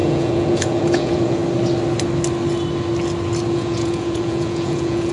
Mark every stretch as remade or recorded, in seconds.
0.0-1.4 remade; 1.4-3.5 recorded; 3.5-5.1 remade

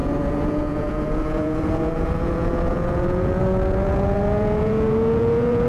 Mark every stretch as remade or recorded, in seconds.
0.0-5.7 remade

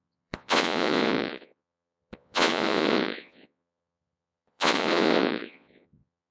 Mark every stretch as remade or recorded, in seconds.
0.0-6.3 remade

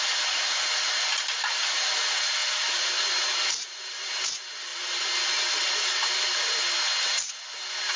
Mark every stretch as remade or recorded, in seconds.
0.0-8.0 recorded

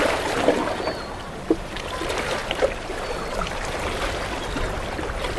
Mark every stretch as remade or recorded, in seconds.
0.0-5.4 recorded

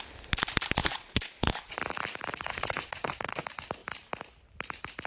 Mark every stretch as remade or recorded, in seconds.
0.0-0.8 recorded; 0.8-1.8 remade; 1.8-2.5 recorded; 2.5-3.4 remade; 3.4-5.1 recorded